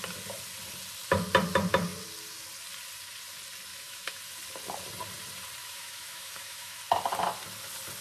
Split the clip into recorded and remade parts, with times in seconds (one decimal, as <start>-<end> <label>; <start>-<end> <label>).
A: 0.0-3.7 recorded; 3.7-4.2 remade; 4.2-5.6 recorded; 5.6-6.8 remade; 6.8-8.0 recorded